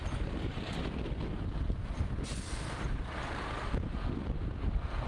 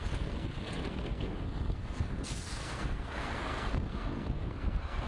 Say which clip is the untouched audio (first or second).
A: first